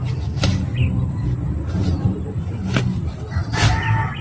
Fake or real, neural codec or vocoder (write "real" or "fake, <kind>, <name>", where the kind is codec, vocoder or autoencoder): real